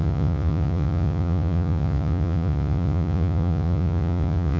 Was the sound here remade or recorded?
remade